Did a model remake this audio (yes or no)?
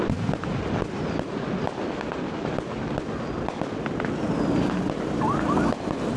no